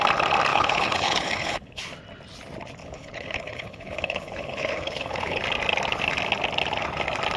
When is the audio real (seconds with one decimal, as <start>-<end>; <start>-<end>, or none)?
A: 0.0-0.5; 1.8-2.8; 5.4-7.4